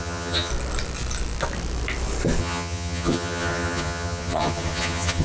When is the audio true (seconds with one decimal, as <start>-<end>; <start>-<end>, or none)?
0.5-2.4